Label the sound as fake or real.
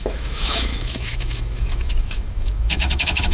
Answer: fake